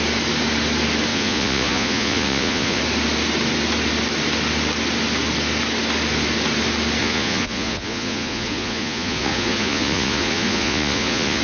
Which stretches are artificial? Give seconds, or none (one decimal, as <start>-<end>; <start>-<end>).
1.1-2.8; 7.0-11.4